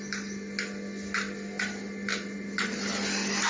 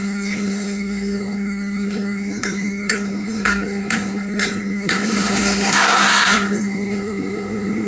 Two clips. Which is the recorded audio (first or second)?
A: first